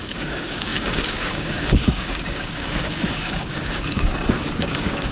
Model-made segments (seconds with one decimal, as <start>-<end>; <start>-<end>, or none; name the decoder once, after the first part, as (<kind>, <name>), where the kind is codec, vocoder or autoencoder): 0.0-4.1 (codec, DAC); 4.6-5.1